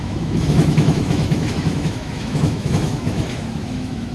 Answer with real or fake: fake